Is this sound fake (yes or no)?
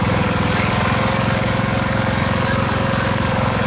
yes